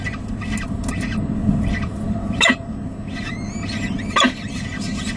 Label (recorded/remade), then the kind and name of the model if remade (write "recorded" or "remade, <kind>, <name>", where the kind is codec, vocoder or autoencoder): recorded